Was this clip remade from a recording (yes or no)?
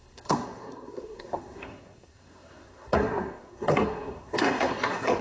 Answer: yes